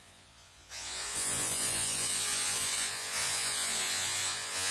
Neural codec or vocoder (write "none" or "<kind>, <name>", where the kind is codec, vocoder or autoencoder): vocoder, Vocos